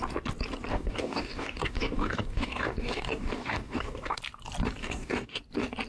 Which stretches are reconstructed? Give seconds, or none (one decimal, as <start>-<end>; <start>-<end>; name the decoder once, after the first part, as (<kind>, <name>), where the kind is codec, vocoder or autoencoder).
0.7-4.2 (codec, DAC); 4.8-5.4